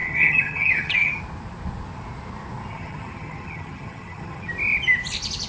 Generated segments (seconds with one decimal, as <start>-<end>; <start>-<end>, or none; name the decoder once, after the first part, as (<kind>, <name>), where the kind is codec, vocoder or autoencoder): 0.0-1.2 (vocoder, HiFi-GAN); 2.7-4.5